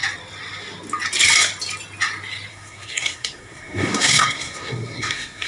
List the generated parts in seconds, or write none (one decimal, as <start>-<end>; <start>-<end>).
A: 2.5-5.5